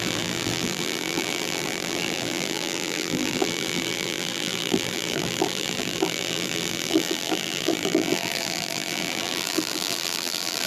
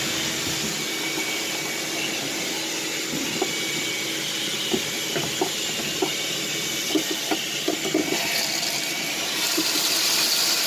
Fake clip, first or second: first